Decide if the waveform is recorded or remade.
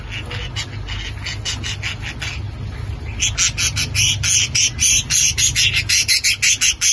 recorded